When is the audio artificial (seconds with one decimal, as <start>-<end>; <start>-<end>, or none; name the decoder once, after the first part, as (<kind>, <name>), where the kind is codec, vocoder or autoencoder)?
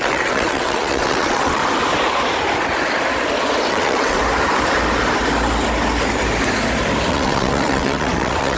0.0-1.6 (vocoder, WaveNeXt); 3.7-4.2; 7.1-8.6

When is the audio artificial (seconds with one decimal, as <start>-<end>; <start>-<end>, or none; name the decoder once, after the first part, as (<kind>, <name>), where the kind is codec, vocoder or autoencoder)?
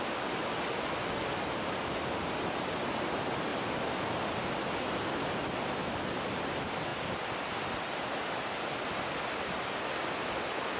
none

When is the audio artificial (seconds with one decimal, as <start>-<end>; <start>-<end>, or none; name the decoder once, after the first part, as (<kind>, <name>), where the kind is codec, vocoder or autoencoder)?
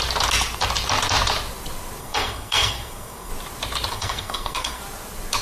2.0-3.3 (codec, SNAC); 3.9-4.8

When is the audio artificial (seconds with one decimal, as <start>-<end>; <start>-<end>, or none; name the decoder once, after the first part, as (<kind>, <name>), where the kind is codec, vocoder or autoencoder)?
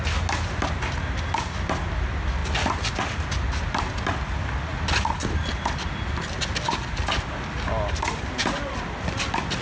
none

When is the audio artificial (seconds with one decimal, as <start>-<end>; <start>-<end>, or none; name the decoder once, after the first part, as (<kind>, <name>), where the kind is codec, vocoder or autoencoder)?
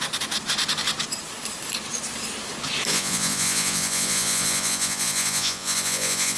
2.9-6.4 (vocoder, Vocos)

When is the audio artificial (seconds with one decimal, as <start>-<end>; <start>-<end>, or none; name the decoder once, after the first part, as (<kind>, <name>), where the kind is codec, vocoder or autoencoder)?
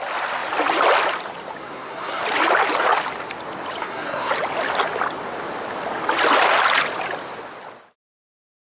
1.6-2.2 (codec, SNAC); 3.8-4.3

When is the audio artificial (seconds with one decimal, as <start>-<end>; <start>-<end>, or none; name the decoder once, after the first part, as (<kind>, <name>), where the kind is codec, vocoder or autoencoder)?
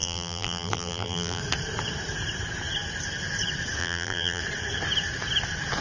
0.0-1.4 (vocoder, BigVGAN v2); 3.8-4.4